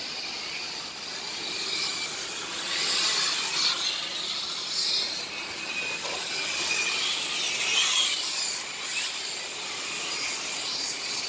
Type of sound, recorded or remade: recorded